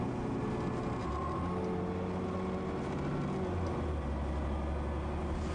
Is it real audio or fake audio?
real